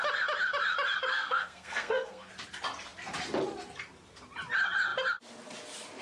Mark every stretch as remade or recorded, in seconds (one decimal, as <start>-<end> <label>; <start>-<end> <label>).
0.0-1.1 recorded; 1.1-2.3 remade; 2.3-6.0 recorded